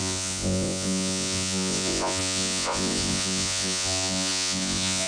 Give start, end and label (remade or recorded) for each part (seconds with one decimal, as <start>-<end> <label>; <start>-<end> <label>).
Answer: 0.0-5.1 remade